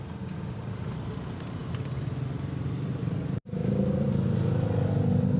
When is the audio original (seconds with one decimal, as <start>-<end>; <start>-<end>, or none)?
0.0-3.6; 4.1-5.4